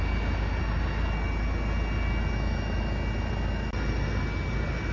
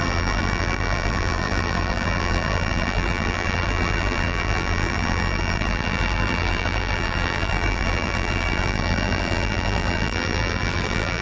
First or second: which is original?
first